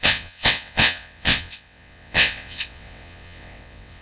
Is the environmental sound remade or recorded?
remade